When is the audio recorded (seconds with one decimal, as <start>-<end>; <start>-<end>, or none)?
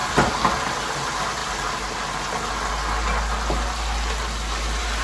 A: 0.0-5.0